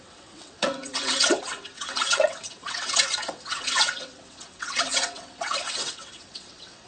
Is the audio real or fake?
fake